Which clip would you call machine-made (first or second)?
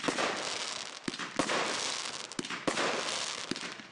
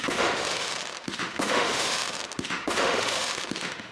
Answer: second